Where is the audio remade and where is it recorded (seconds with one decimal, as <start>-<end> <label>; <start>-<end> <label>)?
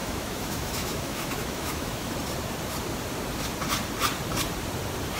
0.0-2.1 remade; 2.1-5.2 recorded